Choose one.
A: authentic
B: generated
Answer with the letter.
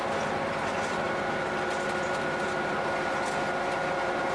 A